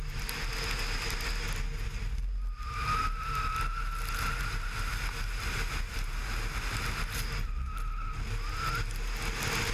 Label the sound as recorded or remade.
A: recorded